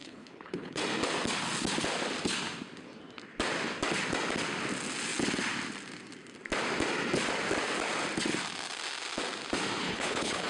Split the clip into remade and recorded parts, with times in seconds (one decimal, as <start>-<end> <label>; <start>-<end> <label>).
0.0-0.8 remade; 0.8-9.8 recorded; 9.8-10.5 remade